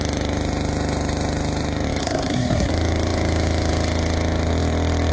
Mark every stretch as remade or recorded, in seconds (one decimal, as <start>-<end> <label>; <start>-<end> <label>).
0.0-2.0 recorded; 2.0-2.7 remade; 2.7-5.1 recorded